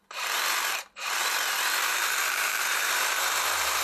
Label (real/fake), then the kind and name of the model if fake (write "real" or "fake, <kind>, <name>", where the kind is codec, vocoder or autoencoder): fake, vocoder, BigVGAN v2